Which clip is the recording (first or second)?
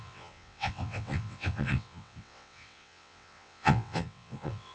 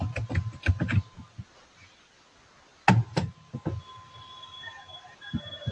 second